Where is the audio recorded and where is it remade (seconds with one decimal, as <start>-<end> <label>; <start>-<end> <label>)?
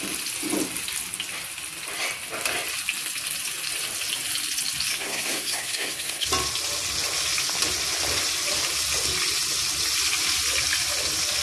0.0-4.9 recorded; 4.9-6.3 remade; 6.3-11.4 recorded